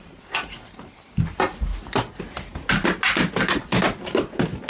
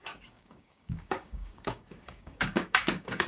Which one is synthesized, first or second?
second